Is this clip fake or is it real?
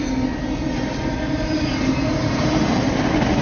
real